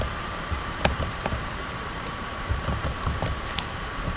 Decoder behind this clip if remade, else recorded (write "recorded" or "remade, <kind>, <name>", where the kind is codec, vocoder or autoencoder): remade, vocoder, BigVGAN v2